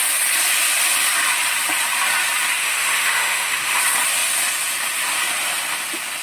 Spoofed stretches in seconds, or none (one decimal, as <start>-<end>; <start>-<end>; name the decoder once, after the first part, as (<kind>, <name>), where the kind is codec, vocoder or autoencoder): 2.6-3.8 (autoencoder, DAC-VAE)